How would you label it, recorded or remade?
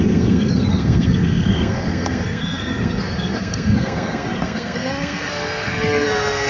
remade